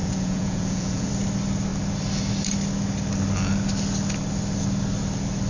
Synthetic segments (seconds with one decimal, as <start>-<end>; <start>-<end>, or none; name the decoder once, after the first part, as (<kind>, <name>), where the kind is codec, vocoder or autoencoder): 0.0-1.1 (vocoder, Vocos)